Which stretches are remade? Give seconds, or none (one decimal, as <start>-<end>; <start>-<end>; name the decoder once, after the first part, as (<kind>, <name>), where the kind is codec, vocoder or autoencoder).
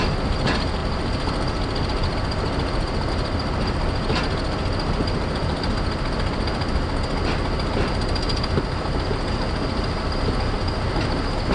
none